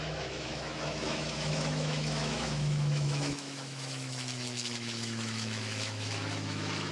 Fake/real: fake